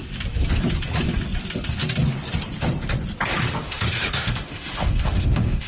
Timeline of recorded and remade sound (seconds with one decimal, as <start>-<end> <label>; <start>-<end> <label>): 0.0-3.3 recorded; 3.3-5.7 remade